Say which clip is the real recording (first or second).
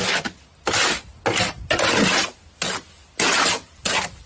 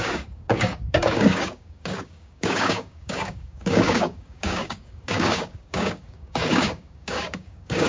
first